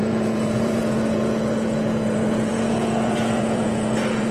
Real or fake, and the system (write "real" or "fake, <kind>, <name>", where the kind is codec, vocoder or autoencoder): fake, vocoder, Vocos